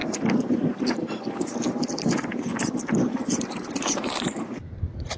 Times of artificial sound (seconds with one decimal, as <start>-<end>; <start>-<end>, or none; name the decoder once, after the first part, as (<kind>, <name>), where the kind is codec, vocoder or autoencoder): 2.5-4.8 (vocoder, BigVGAN v2)